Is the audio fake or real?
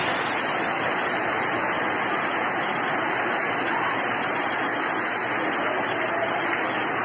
real